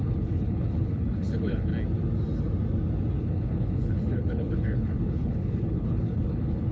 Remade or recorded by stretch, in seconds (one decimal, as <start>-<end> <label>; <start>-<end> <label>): 0.0-1.7 remade; 1.7-3.2 recorded; 3.2-6.7 remade